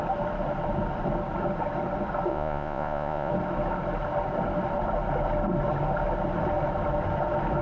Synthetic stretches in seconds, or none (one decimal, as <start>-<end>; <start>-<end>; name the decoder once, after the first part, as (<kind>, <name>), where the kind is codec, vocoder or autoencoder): 2.3-3.3 (vocoder, Vocos)